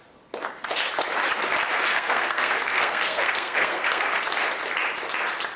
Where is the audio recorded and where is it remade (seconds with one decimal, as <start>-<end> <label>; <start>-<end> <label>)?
0.0-1.9 recorded; 1.9-4.2 remade; 4.2-5.6 recorded